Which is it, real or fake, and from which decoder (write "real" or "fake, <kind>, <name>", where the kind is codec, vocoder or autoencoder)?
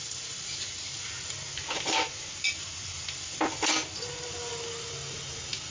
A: real